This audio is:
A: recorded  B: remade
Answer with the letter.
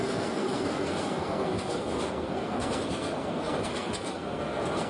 B